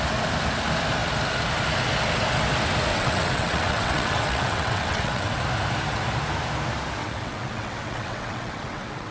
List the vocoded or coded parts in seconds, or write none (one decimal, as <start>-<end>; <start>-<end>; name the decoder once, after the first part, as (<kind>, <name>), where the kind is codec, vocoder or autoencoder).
2.9-5.4 (vocoder, WaveNeXt); 7.0-9.1